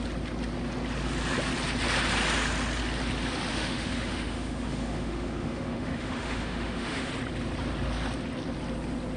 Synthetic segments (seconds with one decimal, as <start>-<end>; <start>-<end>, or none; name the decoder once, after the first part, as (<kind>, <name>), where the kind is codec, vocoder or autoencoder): 3.5-7.1 (autoencoder, DAC-VAE)